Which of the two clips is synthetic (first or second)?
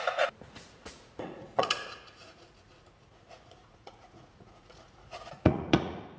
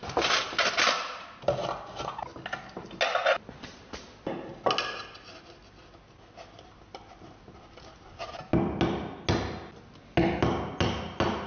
first